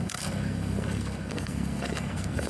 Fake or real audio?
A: fake